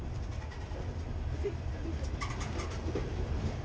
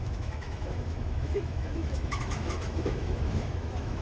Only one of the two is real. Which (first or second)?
first